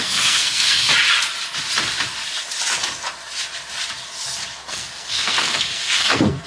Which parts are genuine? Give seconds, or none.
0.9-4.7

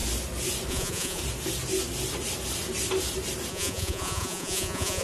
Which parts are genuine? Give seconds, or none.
0.0-0.7; 1.2-3.5

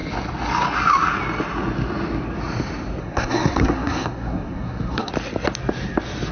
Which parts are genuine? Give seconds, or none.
0.0-3.0; 5.1-6.3

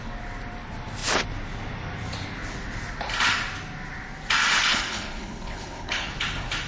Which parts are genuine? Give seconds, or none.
0.0-4.7; 6.1-6.7

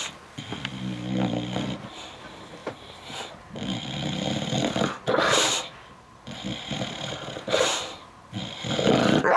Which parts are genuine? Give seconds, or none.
0.0-9.4

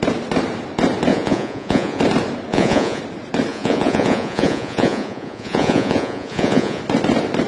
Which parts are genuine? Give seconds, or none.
0.0-1.1; 2.0-2.5; 3.0-3.5; 6.8-7.5

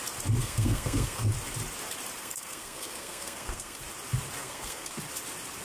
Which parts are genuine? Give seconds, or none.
0.0-0.4; 1.3-2.2; 3.8-4.4; 5.0-5.6